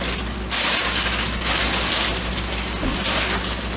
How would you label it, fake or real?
real